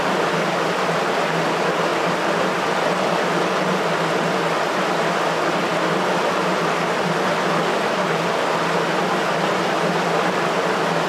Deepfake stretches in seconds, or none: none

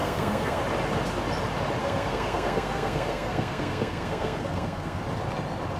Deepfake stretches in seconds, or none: 0.0-0.6 (codec, SNAC); 1.8-5.0

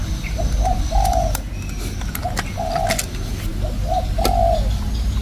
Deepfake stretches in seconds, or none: none

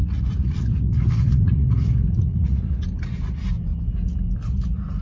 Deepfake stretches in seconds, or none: 0.0-2.8 (vocoder, Vocos)

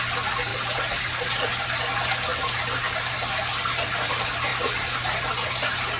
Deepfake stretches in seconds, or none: 0.5-1.8 (vocoder, BigVGAN v2); 4.5-5.0

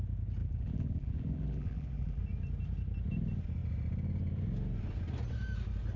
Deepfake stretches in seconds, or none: 0.4-2.2 (vocoder, BigVGAN v2)